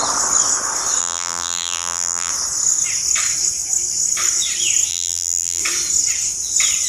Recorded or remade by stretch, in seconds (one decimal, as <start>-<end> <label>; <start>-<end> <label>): 0.0-1.0 recorded; 1.0-2.3 remade; 2.3-4.9 recorded; 4.9-5.6 remade; 5.6-6.9 recorded